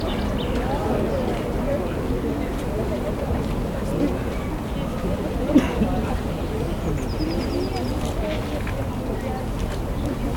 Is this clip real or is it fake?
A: real